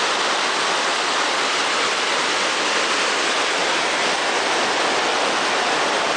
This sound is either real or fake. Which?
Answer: real